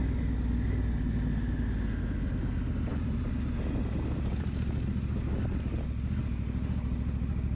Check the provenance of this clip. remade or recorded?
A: recorded